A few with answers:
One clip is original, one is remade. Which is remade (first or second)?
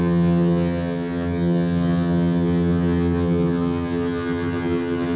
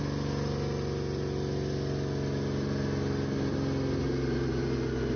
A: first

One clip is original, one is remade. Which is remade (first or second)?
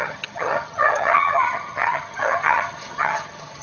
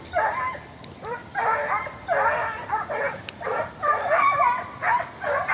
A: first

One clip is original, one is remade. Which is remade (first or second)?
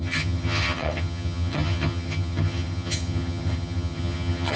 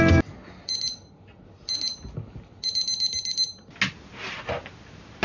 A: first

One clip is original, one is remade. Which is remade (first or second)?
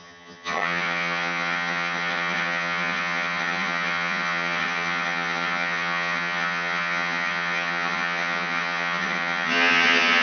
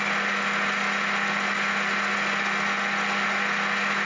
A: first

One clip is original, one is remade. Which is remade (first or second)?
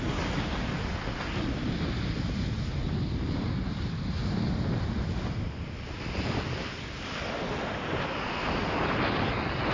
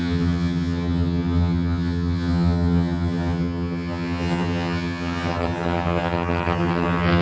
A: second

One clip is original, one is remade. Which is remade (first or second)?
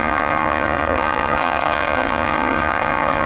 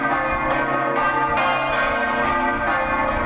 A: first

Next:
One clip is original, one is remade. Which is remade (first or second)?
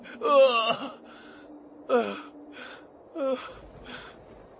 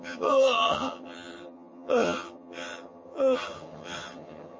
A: second